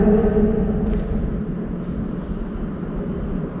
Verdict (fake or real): real